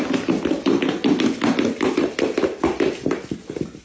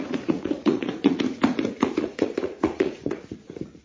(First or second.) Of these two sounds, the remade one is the second